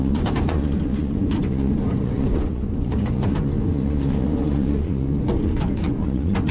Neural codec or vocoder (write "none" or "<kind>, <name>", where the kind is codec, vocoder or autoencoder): vocoder, Vocos